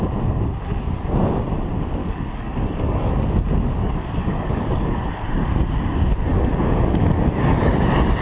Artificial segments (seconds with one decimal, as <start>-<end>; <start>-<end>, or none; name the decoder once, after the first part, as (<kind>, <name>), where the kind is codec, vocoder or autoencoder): 2.0-3.1 (codec, DAC); 3.8-5.1; 6.3-7.7